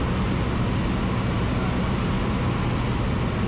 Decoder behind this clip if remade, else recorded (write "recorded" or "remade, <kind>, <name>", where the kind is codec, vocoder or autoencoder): recorded